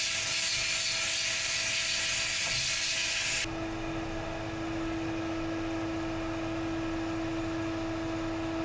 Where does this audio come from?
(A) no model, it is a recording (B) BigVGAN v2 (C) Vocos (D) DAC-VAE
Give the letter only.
A